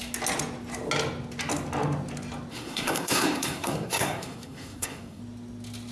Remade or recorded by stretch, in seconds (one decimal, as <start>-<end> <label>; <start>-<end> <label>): 0.0-2.5 recorded; 2.5-5.2 remade; 5.2-5.9 recorded